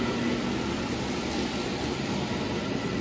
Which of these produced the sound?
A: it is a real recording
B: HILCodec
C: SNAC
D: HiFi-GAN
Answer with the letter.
A